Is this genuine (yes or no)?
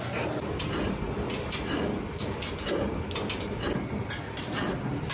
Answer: yes